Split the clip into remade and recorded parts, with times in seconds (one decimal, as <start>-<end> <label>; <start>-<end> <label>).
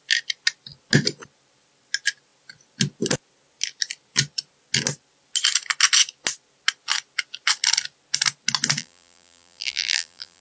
0.0-8.8 recorded; 8.8-10.4 remade